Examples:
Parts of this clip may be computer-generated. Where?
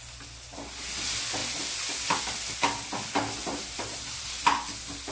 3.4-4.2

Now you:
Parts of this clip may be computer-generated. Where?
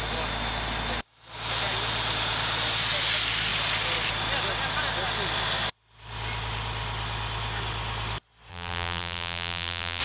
8.5-10.0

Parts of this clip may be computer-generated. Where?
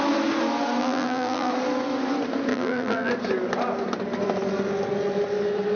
0.8-1.5; 2.5-3.1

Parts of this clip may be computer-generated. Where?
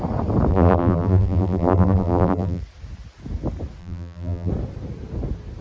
0.5-2.6; 3.8-4.5